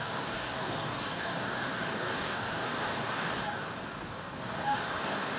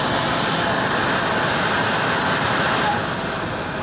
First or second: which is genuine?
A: second